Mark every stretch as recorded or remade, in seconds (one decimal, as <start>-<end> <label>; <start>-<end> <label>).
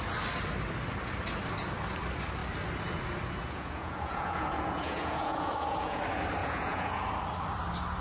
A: 0.0-3.4 recorded; 3.4-6.0 remade; 6.0-6.4 recorded; 6.4-7.1 remade; 7.1-8.0 recorded